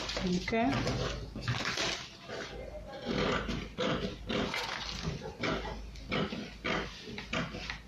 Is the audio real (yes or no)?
yes